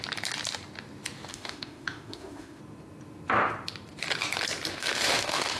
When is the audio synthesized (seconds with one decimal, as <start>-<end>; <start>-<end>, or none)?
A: 1.3-2.6; 4.7-5.6